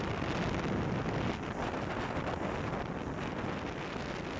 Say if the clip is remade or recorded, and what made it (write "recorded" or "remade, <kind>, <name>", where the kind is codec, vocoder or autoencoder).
recorded